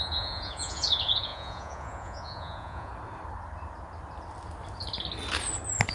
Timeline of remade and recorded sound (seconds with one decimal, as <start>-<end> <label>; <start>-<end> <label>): 0.0-2.9 remade; 2.9-5.9 recorded